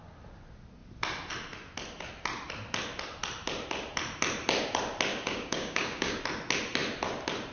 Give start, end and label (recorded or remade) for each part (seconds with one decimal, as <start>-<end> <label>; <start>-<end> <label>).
0.0-5.1 recorded; 5.1-6.2 remade; 6.2-7.5 recorded